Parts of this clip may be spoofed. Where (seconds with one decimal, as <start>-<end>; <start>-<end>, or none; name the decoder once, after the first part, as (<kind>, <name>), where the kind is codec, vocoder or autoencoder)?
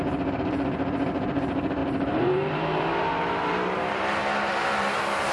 1.8-5.3 (vocoder, BigVGAN v2)